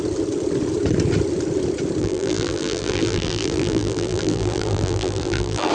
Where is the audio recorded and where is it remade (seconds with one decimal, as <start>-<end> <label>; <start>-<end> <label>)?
0.0-2.0 recorded; 2.0-5.7 remade